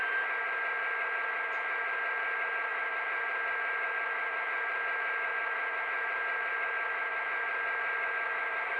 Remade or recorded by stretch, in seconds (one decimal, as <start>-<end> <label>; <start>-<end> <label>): 0.0-8.8 recorded